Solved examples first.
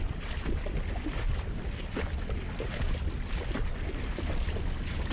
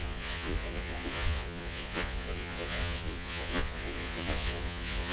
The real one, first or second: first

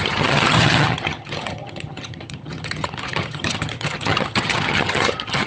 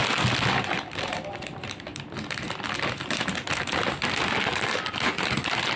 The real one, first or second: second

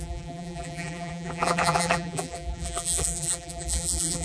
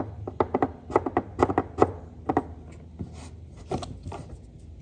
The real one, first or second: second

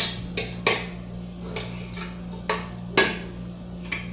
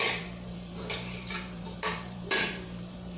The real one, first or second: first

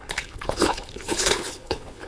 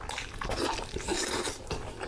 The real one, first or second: second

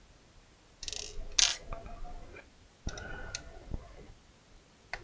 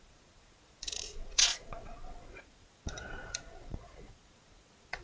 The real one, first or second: first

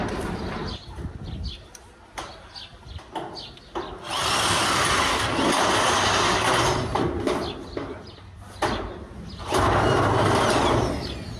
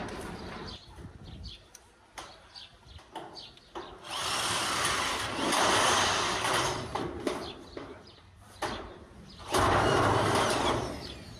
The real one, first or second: first